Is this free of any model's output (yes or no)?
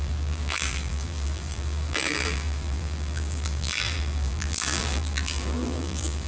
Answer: no